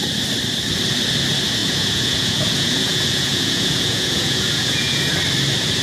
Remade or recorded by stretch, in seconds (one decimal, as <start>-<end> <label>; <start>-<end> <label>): 0.0-1.6 recorded; 1.6-5.1 remade; 5.1-5.8 recorded